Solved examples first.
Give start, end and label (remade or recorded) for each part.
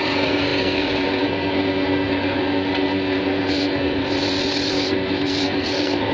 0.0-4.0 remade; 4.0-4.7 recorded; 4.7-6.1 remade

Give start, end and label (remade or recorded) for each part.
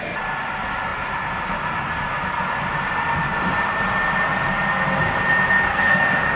0.0-5.7 recorded; 5.7-6.4 remade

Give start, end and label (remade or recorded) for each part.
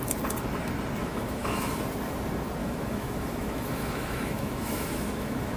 0.0-1.0 recorded; 1.0-1.8 remade; 1.8-2.6 recorded; 2.6-5.6 remade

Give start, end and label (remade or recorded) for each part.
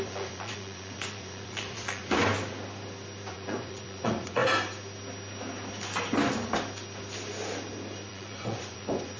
0.0-2.2 remade; 2.2-3.3 recorded; 3.3-4.4 remade; 4.4-8.1 recorded; 8.1-9.2 remade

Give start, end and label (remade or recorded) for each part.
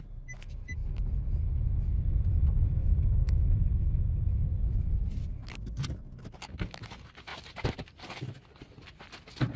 0.0-2.8 recorded; 2.8-3.4 remade; 3.4-9.6 recorded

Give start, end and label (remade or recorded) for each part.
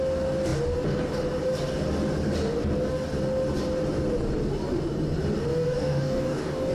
0.0-5.5 recorded; 5.5-6.7 remade